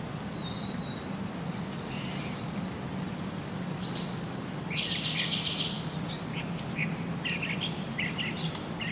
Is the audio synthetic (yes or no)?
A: no